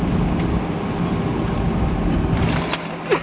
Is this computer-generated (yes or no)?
no